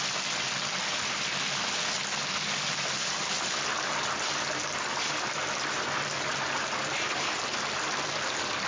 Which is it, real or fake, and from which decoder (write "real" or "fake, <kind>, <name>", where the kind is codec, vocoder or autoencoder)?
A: real